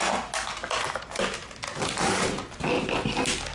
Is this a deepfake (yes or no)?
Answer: no